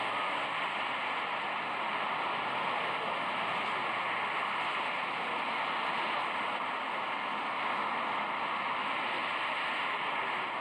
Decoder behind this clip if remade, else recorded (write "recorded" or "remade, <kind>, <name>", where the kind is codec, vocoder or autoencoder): recorded